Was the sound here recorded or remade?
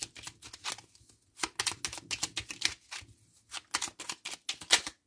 recorded